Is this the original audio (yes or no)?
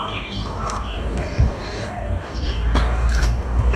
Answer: no